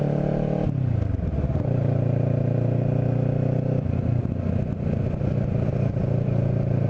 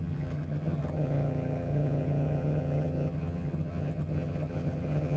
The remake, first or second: second